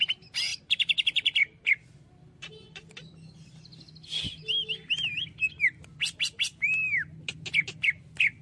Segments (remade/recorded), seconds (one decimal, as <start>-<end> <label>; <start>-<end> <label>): 0.0-0.5 recorded; 0.5-3.6 remade; 3.6-8.4 recorded